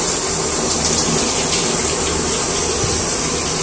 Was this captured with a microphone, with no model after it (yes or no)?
yes